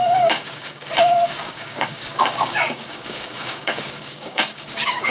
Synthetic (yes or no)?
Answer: yes